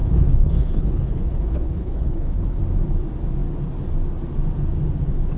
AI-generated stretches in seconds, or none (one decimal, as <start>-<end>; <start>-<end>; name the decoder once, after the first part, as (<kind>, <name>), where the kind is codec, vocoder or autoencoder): 0.0-2.6 (codec, HILCodec)